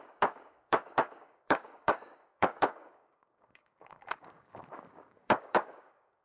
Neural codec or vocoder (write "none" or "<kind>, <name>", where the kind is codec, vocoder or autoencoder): codec, DAC